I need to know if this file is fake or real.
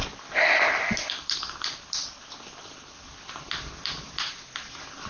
real